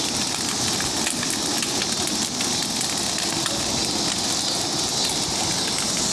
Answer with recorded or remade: recorded